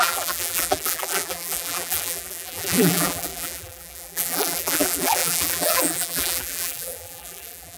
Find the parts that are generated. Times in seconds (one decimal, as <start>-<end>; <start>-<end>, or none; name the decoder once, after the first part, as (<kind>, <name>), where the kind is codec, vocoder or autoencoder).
0.0-7.8 (vocoder, BigVGAN v2)